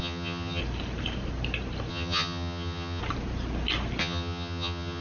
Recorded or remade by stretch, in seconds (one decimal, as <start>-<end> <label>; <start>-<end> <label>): 0.0-0.6 remade; 0.6-1.9 recorded; 1.9-3.0 remade; 3.0-4.0 recorded; 4.0-5.0 remade